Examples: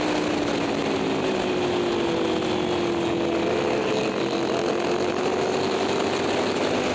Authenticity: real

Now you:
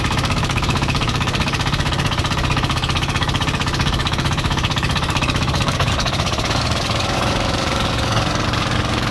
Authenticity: fake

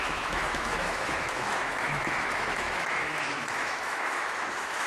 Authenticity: fake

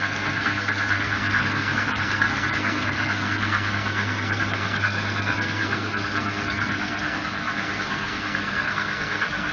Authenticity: fake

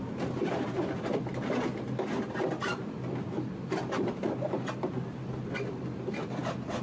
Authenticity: real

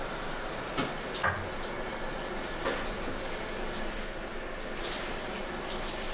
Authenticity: real